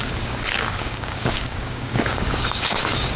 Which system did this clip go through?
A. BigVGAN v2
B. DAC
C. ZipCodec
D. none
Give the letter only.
B